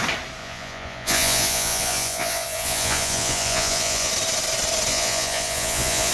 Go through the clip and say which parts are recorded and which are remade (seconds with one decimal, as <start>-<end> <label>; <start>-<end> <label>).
0.0-0.4 recorded; 0.4-4.1 remade; 4.1-4.9 recorded; 4.9-6.1 remade